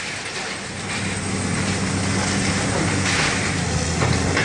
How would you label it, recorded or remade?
recorded